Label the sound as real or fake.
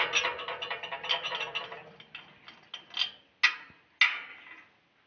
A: real